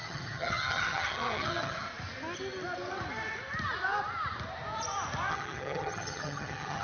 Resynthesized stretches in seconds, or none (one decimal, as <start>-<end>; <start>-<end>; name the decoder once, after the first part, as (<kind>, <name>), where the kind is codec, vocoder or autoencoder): 0.0-1.9 (vocoder, HiFi-GAN); 5.3-6.8